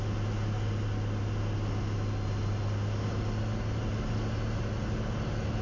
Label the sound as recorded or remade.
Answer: recorded